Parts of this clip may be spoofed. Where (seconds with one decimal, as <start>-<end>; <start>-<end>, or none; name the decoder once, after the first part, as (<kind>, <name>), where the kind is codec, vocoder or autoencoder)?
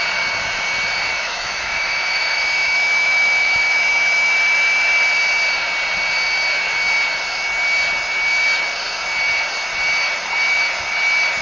1.1-4.3 (autoencoder, DAC-VAE)